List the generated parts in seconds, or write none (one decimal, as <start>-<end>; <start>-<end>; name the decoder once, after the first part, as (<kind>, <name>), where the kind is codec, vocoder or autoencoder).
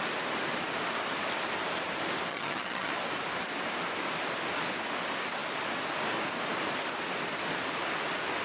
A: 2.3-2.9 (vocoder, HiFi-GAN)